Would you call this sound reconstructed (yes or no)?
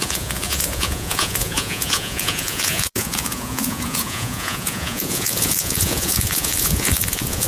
yes